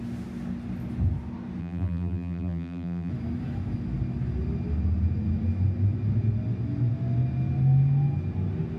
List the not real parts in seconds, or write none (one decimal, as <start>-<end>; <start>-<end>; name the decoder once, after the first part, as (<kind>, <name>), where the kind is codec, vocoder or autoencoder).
1.6-3.1 (vocoder, BigVGAN v2)